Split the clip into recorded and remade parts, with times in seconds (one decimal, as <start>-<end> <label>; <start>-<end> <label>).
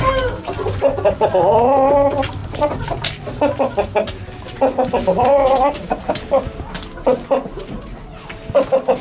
0.0-9.0 recorded